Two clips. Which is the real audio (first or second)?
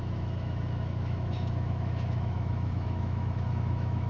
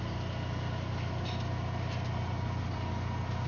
second